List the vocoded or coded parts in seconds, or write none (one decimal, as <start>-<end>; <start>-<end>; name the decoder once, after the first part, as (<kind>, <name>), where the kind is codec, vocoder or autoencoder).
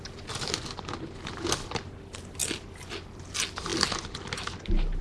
none